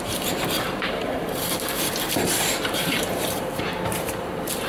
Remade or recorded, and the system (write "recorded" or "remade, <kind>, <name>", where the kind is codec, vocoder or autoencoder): remade, vocoder, BigVGAN v2